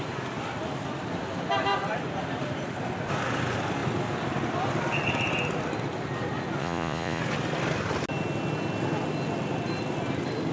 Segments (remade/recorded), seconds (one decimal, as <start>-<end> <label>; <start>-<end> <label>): 0.0-6.6 recorded; 6.6-7.2 remade; 7.2-10.5 recorded